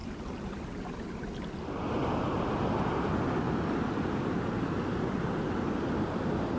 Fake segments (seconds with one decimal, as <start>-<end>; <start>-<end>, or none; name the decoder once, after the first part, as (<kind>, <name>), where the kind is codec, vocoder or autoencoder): none